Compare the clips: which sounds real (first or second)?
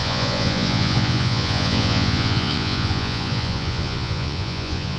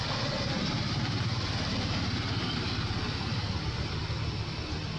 second